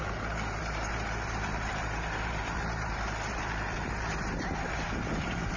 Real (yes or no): no